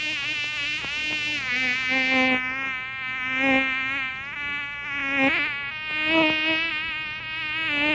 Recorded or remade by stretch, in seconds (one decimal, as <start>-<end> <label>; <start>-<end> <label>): 0.0-7.9 recorded